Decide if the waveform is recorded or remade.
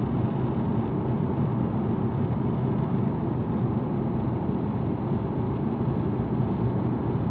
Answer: recorded